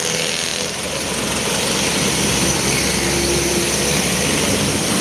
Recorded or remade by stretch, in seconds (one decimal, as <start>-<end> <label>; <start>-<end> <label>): 0.0-5.0 recorded